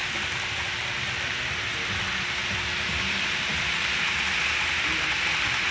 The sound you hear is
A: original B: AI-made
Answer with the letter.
A